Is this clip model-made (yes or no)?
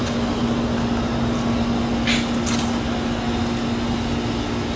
no